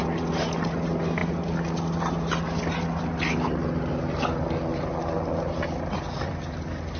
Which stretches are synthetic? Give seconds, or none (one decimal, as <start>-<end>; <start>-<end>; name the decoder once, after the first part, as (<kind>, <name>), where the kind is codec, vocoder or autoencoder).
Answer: none